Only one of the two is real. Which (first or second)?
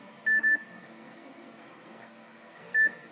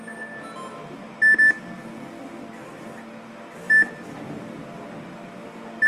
second